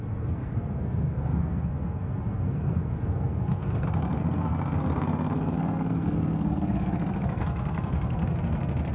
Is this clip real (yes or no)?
no